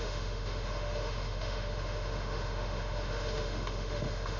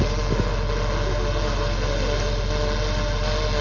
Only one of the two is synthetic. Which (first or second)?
first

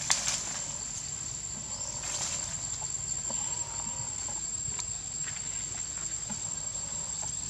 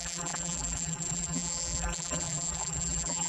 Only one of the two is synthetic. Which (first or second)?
second